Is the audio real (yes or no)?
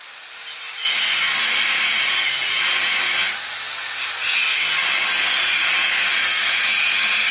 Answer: yes